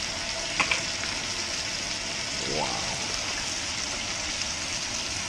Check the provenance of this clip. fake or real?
real